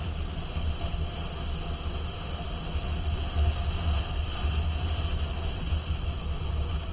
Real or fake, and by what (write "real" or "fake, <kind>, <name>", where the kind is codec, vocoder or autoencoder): real